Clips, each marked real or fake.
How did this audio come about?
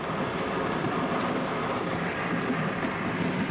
real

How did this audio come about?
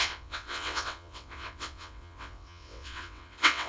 fake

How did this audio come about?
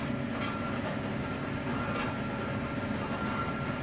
real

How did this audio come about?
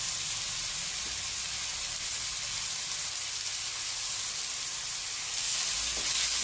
real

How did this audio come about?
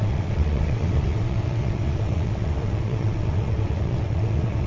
fake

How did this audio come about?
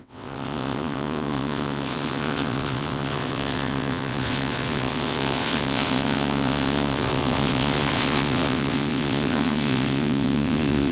fake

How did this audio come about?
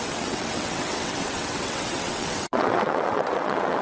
fake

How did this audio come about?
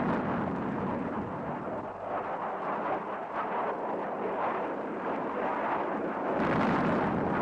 real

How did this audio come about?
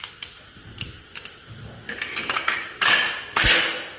real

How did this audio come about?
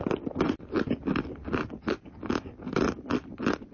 real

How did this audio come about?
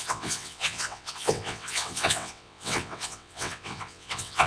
fake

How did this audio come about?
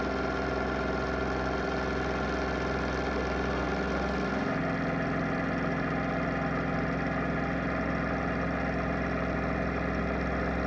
real